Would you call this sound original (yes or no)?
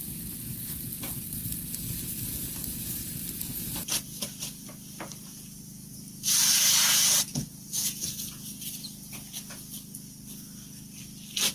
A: yes